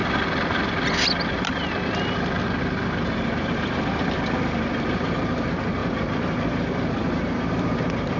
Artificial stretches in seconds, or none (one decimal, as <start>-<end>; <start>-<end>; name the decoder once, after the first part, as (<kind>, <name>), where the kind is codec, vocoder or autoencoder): 0.9-8.2 (vocoder, BigVGAN v2)